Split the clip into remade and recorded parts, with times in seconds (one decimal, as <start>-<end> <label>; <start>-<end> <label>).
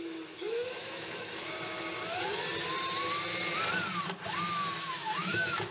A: 0.0-1.5 remade; 1.5-4.9 recorded; 4.9-5.7 remade